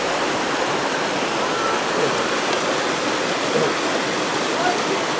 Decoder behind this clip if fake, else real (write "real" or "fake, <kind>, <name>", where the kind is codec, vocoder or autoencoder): real